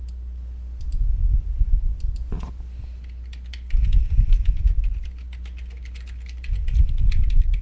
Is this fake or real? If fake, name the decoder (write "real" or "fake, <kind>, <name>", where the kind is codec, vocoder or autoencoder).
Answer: real